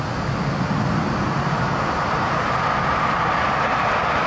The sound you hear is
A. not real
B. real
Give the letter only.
B